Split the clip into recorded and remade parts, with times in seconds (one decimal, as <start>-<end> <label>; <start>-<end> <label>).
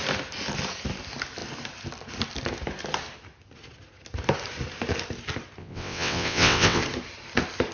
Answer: 0.0-5.6 recorded; 5.6-6.8 remade; 6.8-7.7 recorded